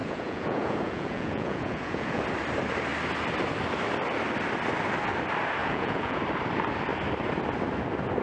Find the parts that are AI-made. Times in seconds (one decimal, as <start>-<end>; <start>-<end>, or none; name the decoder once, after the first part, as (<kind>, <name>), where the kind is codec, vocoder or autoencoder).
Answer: 0.0-2.2 (vocoder, Vocos); 5.6-6.2